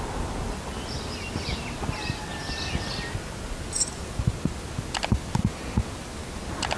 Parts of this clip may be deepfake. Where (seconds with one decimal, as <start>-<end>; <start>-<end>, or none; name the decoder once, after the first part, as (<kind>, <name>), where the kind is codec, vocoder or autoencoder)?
none